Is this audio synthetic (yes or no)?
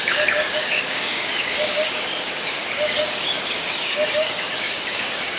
yes